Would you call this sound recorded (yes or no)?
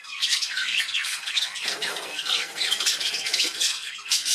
no